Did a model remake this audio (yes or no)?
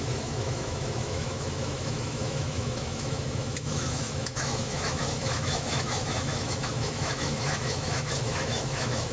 yes